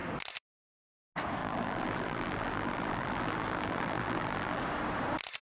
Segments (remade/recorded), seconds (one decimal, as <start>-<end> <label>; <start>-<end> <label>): 0.0-1.4 recorded; 1.4-4.6 remade; 4.6-5.4 recorded